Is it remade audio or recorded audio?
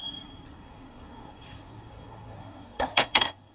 remade